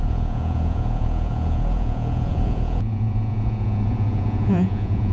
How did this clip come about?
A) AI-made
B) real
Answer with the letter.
A